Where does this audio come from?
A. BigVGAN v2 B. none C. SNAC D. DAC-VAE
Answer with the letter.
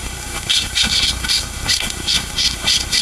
C